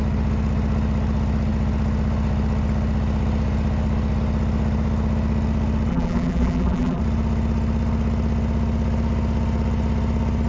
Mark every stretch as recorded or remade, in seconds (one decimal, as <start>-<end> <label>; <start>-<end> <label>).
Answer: 0.0-5.9 recorded; 5.9-7.0 remade; 7.0-10.5 recorded